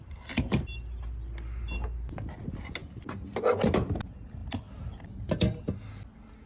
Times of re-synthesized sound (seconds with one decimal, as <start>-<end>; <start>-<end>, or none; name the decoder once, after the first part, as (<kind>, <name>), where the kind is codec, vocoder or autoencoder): none